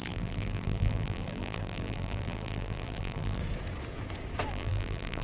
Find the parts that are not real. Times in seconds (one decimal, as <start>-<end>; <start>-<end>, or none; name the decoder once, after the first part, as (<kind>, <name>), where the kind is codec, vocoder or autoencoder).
0.0-3.4 (vocoder, BigVGAN v2); 4.5-5.2